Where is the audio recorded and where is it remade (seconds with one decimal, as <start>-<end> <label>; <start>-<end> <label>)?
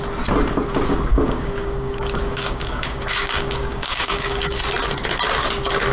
0.0-1.1 recorded; 1.1-4.6 remade; 4.6-5.9 recorded